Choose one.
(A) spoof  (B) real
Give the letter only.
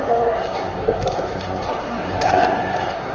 A